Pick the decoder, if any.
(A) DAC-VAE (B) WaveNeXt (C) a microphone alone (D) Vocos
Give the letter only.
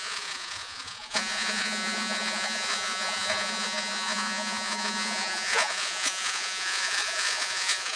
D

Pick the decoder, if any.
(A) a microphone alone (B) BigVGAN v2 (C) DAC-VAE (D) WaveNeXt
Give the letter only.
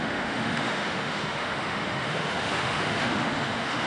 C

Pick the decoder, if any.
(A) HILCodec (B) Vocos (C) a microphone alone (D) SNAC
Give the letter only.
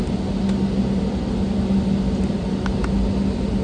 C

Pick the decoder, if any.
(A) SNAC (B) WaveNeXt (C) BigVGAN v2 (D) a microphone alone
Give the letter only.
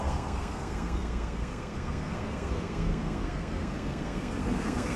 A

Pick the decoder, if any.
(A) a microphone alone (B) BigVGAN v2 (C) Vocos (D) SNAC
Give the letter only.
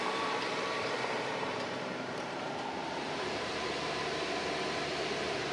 B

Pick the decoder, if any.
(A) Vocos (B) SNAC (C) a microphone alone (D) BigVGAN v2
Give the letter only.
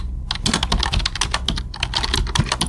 C